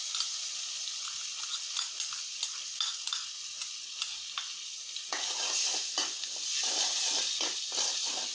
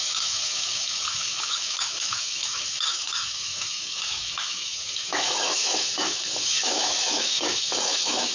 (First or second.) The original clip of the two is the first